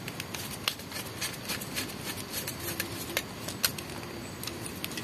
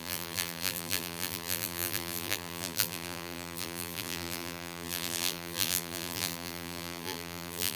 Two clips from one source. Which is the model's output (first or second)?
second